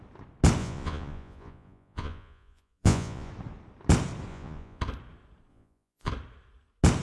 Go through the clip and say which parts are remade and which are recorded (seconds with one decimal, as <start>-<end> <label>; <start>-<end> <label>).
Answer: 0.0-0.6 recorded; 0.6-3.3 remade; 3.3-4.3 recorded; 4.3-4.8 remade; 4.8-5.5 recorded; 5.5-6.1 remade; 6.1-7.0 recorded